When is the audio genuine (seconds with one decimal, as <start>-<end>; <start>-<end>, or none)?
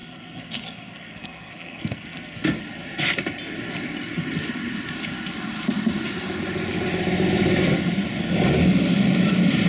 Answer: 2.6-9.7